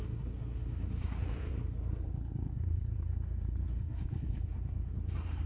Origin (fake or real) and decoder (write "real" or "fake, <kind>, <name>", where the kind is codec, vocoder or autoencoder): fake, codec, SNAC